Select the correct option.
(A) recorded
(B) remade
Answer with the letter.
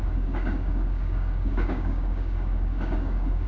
B